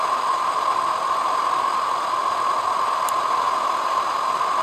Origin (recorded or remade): recorded